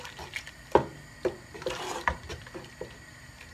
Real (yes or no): yes